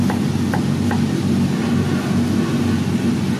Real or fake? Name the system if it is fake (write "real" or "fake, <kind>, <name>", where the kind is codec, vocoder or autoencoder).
real